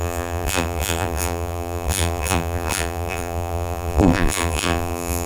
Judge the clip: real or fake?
fake